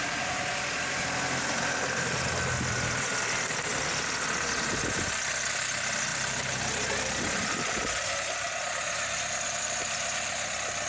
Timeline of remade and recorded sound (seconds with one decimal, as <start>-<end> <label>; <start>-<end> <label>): 0.0-6.1 recorded; 6.1-8.1 remade; 8.1-10.9 recorded